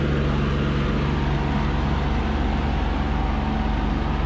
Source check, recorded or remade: recorded